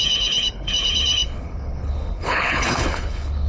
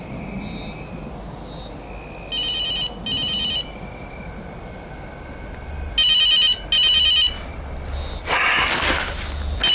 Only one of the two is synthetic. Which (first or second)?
first